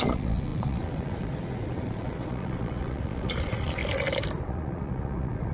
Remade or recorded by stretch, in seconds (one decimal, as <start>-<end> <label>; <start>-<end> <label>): 0.0-3.8 remade; 3.8-4.4 recorded; 4.4-5.5 remade